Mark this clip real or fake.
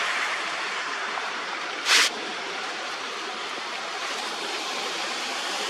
fake